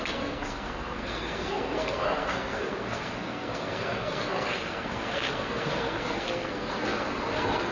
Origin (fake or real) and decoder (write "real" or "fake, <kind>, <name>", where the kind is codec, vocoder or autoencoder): fake, codec, SNAC